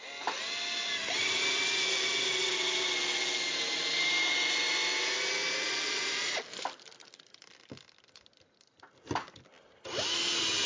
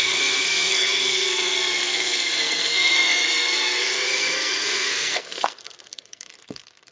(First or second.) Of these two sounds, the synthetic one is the second